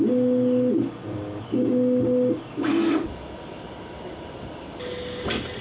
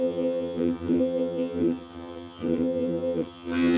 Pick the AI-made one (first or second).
second